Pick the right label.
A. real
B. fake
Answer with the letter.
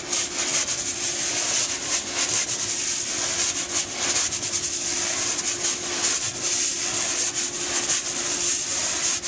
A